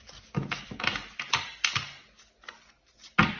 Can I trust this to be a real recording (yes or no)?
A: yes